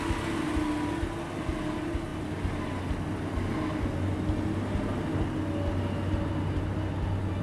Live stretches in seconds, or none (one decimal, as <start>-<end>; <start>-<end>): 0.0-7.4